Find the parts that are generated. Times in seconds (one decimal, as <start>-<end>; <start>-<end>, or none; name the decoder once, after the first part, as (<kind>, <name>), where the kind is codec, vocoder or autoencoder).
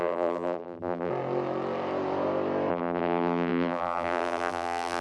0.0-1.1 (vocoder, BigVGAN v2); 2.7-5.0